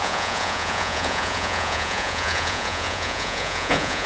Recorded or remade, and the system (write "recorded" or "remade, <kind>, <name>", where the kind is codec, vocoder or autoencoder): remade, vocoder, Vocos